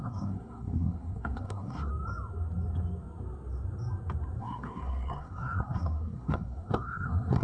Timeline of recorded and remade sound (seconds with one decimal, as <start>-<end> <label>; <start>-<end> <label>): 0.0-1.9 remade; 1.9-4.4 recorded; 4.4-7.4 remade

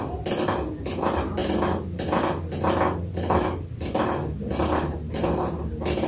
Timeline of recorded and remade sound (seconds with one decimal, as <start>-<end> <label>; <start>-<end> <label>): 0.0-6.1 recorded

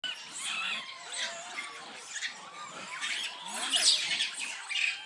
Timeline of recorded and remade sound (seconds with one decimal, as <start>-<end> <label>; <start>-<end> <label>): 0.0-5.1 recorded